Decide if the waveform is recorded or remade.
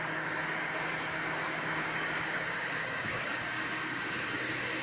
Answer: remade